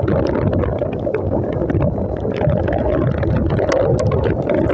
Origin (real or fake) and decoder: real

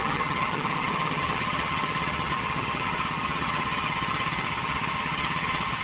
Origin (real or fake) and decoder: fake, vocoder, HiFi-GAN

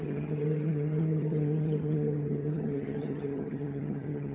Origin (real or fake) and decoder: fake, vocoder, HiFi-GAN